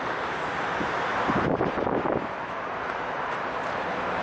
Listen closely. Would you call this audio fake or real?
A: real